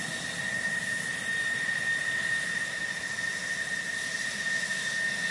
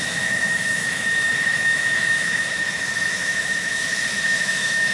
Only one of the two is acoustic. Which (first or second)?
first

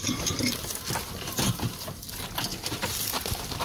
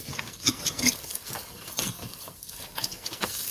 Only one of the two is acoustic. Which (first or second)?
first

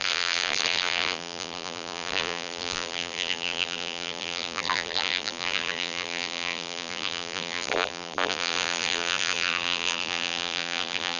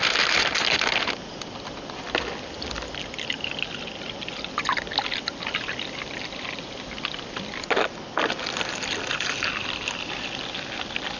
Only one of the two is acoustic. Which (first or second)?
second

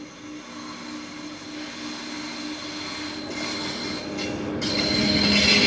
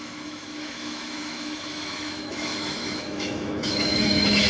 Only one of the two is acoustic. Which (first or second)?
first